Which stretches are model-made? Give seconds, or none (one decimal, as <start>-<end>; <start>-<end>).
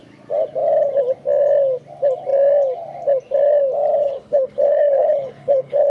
4.0-5.9